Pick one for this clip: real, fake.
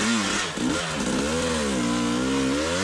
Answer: real